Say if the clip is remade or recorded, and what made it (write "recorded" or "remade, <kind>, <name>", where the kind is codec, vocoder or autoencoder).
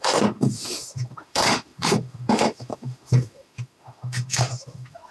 remade, autoencoder, DAC-VAE